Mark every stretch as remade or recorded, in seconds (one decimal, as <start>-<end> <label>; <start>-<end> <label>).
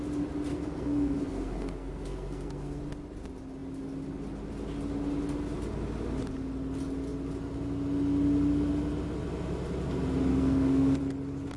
0.0-0.5 recorded; 0.5-2.8 remade; 2.8-10.3 recorded; 10.3-11.0 remade; 11.0-11.6 recorded